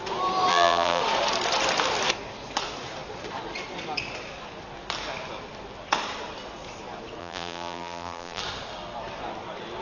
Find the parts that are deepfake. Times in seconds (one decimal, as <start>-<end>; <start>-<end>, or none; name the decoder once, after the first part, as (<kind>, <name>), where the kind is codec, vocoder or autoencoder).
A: 0.5-1.0 (vocoder, BigVGAN v2); 7.2-8.4